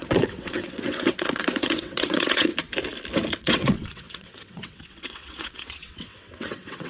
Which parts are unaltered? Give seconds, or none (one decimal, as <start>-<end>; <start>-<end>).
2.5-3.4